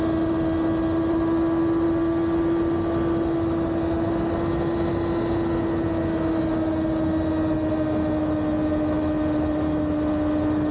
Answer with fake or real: real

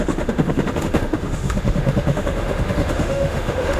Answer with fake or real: fake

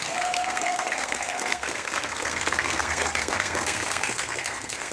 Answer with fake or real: fake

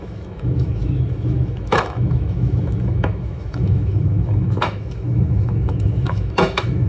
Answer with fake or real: fake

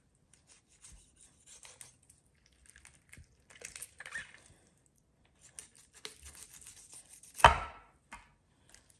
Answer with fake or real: real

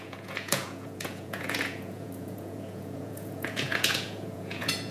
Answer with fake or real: fake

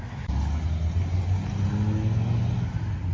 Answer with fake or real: real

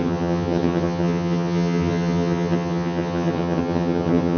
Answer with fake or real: fake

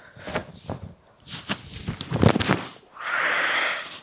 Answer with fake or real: real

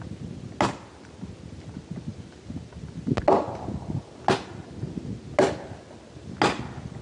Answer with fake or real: real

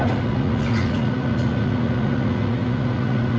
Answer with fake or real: fake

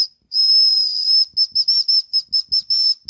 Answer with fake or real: real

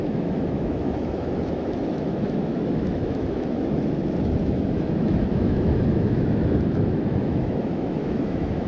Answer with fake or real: fake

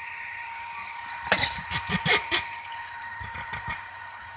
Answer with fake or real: fake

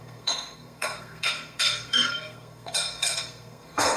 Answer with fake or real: fake